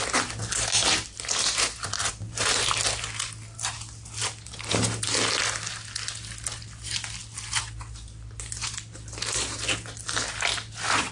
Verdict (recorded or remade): recorded